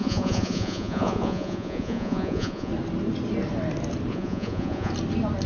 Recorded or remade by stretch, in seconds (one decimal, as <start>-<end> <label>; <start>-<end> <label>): 0.0-2.7 remade; 2.7-4.1 recorded; 4.1-4.9 remade; 4.9-5.5 recorded